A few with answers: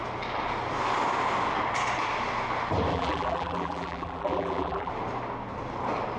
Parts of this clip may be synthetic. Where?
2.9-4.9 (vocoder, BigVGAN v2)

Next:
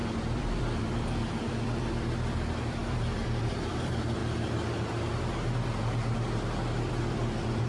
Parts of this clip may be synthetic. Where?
0.0-4.2 (vocoder, BigVGAN v2); 6.9-7.7